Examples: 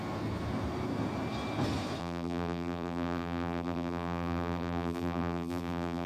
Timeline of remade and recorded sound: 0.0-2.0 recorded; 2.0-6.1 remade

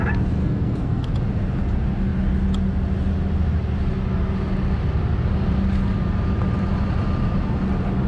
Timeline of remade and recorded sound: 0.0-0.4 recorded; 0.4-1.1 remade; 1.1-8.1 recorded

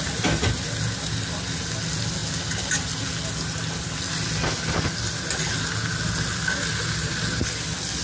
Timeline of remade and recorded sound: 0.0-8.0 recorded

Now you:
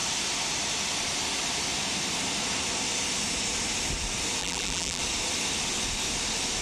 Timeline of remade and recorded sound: 0.0-4.4 recorded; 4.4-5.0 remade; 5.0-6.6 recorded